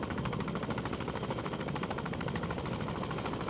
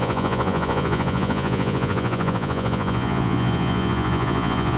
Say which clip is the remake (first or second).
second